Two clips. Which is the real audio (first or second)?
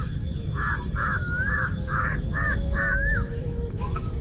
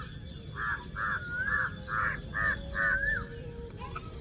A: second